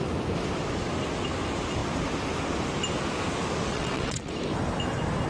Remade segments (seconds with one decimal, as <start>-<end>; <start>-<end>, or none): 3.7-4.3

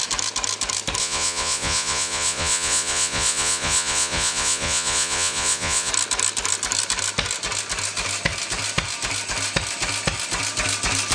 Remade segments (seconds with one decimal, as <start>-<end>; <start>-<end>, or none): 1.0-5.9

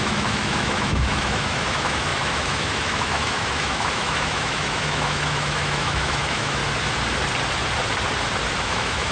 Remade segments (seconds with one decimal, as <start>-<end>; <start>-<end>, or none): 0.0-6.6; 8.6-9.1

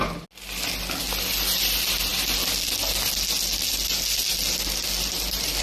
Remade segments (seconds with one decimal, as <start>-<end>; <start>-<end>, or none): none

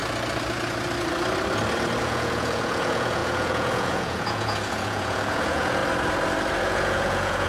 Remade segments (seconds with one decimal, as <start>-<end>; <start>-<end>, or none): 2.0-5.8; 6.6-7.5

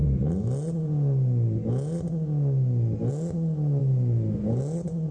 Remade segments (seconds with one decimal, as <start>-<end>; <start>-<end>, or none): none

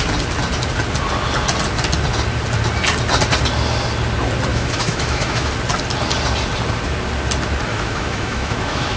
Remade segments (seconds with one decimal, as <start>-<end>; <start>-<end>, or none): 4.5-5.5; 7.7-9.0